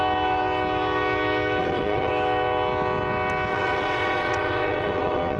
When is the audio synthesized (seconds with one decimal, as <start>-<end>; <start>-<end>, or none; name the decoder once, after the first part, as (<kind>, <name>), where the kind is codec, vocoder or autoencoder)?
1.6-2.1 (vocoder, WaveNeXt); 3.5-5.4